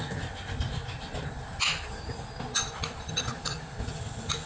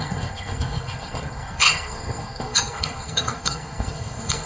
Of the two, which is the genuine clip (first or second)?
first